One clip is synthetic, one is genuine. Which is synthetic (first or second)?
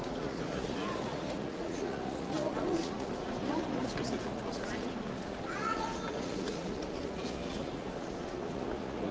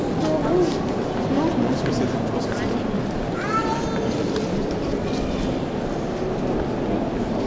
first